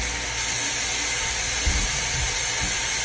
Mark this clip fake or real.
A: real